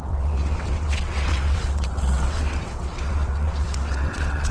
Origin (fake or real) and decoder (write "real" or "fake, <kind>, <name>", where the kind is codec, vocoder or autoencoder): fake, vocoder, WaveNeXt